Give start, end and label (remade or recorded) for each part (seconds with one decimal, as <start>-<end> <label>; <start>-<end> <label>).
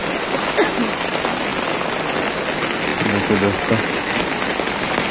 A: 0.0-5.1 recorded